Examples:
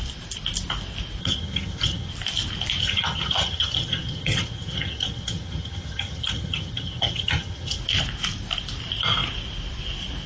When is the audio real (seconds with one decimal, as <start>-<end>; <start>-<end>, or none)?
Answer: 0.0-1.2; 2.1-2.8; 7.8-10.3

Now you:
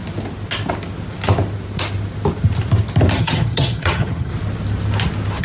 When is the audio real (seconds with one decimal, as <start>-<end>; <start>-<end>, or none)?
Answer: 0.0-3.2; 4.3-5.4

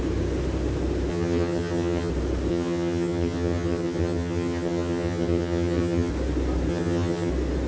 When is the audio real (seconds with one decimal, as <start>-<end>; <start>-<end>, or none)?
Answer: 0.0-1.1; 2.1-2.5; 6.1-6.7; 7.3-7.7

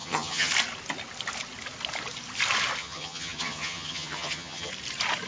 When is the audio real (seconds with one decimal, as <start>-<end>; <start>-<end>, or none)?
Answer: 0.5-2.8; 4.7-5.3

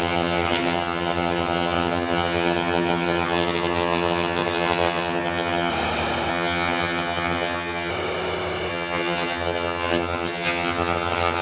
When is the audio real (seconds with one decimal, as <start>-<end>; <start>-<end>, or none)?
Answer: 5.7-6.3; 7.9-8.7